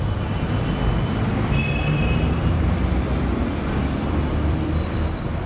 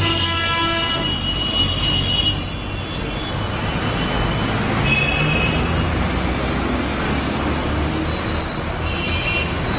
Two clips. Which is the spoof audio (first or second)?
first